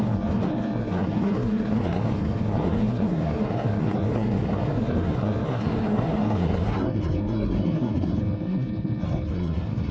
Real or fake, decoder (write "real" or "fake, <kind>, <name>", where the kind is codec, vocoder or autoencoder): fake, codec, SNAC